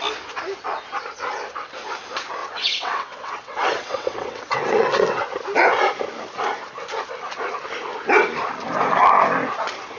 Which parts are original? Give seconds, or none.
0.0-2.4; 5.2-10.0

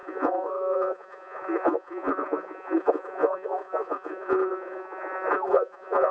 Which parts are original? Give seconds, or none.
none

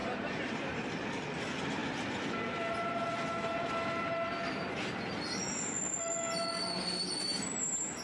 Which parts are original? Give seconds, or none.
0.9-8.0